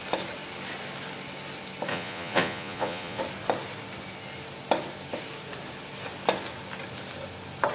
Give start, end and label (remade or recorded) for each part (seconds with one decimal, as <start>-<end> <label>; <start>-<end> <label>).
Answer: 0.0-1.9 recorded; 1.9-3.2 remade; 3.2-7.7 recorded